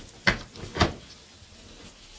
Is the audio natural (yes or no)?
yes